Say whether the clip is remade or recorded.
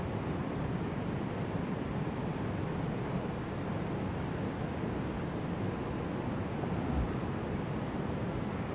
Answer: recorded